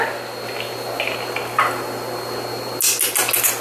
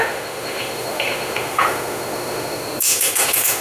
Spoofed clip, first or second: second